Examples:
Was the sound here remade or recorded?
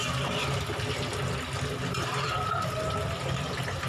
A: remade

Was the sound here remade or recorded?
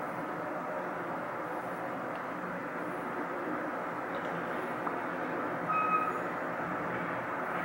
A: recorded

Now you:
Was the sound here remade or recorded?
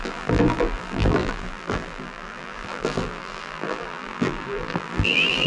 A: remade